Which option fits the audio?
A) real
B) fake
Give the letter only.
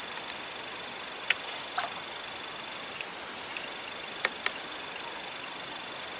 A